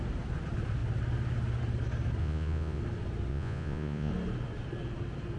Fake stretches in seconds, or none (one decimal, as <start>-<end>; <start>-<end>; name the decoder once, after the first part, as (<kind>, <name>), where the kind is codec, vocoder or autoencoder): 2.2-2.8 (vocoder, Vocos); 3.3-4.1